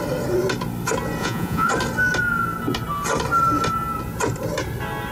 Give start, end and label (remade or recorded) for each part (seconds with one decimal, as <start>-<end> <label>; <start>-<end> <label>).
0.0-1.2 recorded; 1.2-1.7 remade; 1.7-5.1 recorded